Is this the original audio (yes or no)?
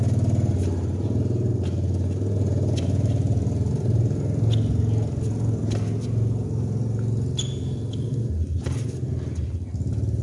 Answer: yes